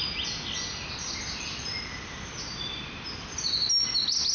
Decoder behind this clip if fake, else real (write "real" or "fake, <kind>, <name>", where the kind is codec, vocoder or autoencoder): real